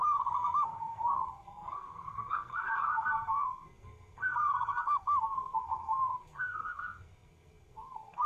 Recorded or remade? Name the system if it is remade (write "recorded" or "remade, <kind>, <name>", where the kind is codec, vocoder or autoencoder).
remade, codec, SNAC